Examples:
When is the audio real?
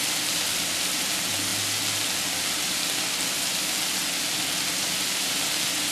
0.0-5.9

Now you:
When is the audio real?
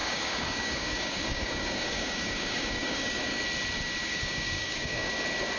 3.4-4.0; 5.1-5.6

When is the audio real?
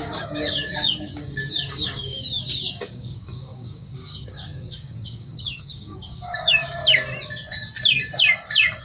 6.8-8.8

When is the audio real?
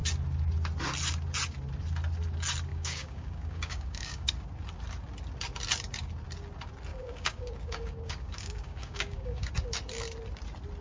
0.0-2.7; 4.3-6.9; 9.5-10.8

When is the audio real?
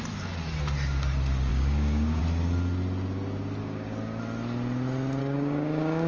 0.0-1.5; 2.2-3.6; 4.2-5.2